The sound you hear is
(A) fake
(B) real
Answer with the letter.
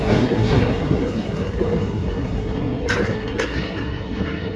A